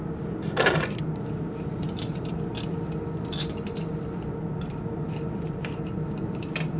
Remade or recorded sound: recorded